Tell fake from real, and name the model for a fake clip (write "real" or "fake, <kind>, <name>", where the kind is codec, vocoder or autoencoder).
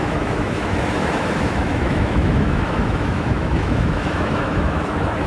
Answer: fake, autoencoder, DAC-VAE